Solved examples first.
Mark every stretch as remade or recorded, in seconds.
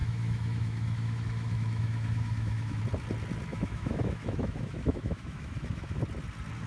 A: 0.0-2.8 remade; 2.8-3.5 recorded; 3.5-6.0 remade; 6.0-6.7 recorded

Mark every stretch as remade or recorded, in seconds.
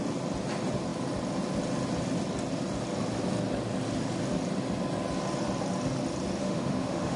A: 0.0-6.4 recorded; 6.4-7.2 remade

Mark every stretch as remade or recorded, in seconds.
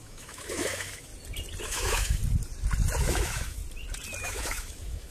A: 0.0-1.1 remade; 1.1-1.6 recorded; 1.6-2.2 remade; 2.2-3.0 recorded; 3.0-3.6 remade; 3.6-4.2 recorded; 4.2-5.1 remade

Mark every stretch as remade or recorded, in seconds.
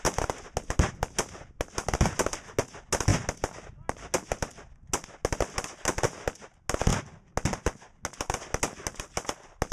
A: 0.0-9.7 recorded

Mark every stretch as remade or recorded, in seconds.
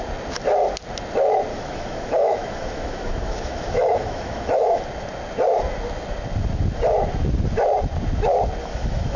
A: 0.0-1.5 recorded; 1.5-4.8 remade; 4.8-8.6 recorded; 8.6-9.2 remade